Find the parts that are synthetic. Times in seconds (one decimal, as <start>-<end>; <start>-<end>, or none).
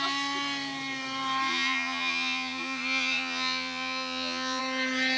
1.5-4.6